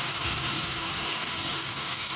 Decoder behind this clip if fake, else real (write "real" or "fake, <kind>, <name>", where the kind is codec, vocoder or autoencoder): fake, codec, DAC